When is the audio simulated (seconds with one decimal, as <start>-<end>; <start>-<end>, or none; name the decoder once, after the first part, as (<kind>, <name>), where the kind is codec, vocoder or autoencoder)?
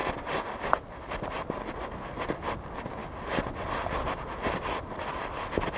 none